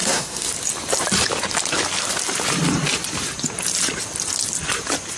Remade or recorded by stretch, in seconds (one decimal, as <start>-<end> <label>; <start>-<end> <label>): 0.0-0.5 remade; 0.5-5.2 recorded

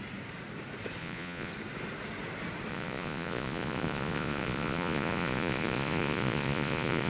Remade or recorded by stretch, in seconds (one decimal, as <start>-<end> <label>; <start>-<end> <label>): 0.0-1.0 recorded; 1.0-1.5 remade; 1.5-2.7 recorded; 2.7-7.1 remade

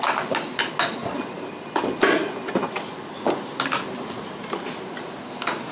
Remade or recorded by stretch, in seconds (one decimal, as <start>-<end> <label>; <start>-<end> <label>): 0.0-5.7 recorded

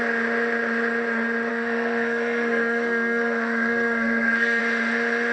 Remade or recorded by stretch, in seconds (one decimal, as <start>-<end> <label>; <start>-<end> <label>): 0.0-1.5 recorded; 1.5-4.6 remade; 4.6-5.3 recorded

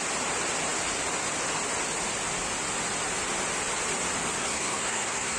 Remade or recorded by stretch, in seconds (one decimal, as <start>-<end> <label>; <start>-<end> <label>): 0.0-4.4 recorded; 4.4-5.4 remade

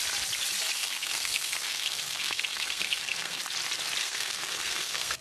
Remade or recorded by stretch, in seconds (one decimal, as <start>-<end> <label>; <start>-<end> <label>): 0.0-0.8 recorded; 0.8-3.4 remade; 3.4-4.0 recorded; 4.0-5.2 remade

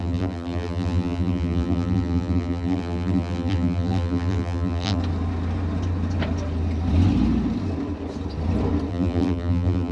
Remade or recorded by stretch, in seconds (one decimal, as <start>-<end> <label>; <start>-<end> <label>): 0.0-5.0 remade; 5.0-8.9 recorded; 8.9-9.9 remade

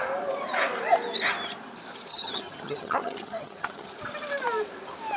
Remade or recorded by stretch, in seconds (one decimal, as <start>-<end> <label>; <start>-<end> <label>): 0.0-2.1 recorded; 2.1-4.0 remade; 4.0-5.2 recorded